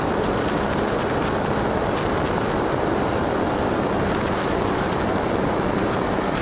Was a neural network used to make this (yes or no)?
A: no